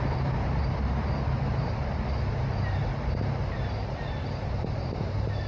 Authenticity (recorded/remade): remade